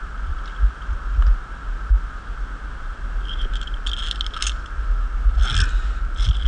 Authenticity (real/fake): real